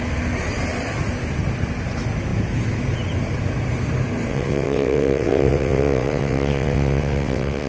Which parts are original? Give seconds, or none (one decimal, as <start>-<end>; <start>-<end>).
0.0-4.3